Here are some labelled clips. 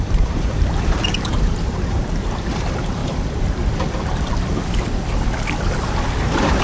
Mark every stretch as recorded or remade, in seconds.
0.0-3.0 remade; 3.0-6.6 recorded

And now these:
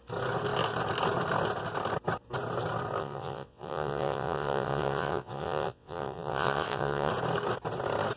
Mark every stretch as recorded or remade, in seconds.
0.0-3.0 recorded; 3.0-7.1 remade; 7.1-8.2 recorded

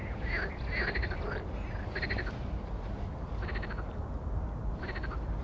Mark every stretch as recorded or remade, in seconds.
0.0-5.4 recorded

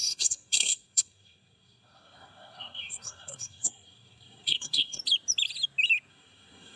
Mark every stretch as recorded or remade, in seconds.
0.0-5.0 remade; 5.0-6.1 recorded; 6.1-6.8 remade

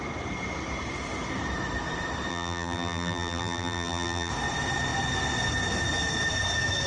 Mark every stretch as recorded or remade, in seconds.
0.0-2.3 recorded; 2.3-4.3 remade; 4.3-6.9 recorded